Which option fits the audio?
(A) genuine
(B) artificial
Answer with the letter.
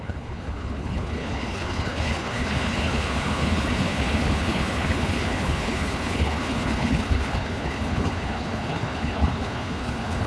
B